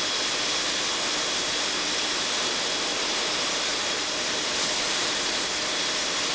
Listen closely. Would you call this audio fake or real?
real